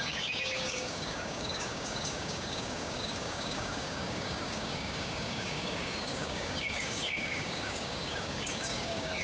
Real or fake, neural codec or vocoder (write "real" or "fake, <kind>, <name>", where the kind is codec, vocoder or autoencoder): fake, codec, DAC